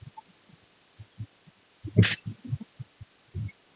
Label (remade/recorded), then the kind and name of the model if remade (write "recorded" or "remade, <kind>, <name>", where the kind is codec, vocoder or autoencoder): recorded